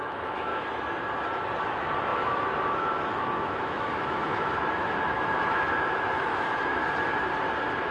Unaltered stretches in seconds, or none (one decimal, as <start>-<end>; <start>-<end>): 0.5-1.6; 6.8-7.9